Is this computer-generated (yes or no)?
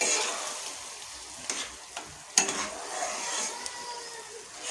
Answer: no